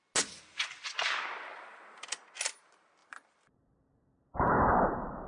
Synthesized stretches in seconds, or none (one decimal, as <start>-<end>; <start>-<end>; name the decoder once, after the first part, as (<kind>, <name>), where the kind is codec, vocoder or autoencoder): 3.0-5.3 (vocoder, BigVGAN v2)